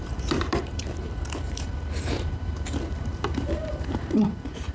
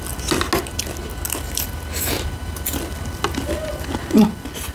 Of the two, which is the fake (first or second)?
first